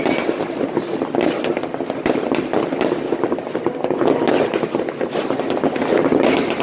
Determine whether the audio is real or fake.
real